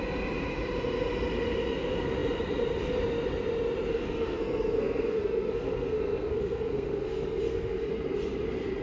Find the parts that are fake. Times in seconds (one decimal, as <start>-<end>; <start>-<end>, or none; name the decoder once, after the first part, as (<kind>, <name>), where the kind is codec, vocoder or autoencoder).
3.9-7.9 (codec, SNAC)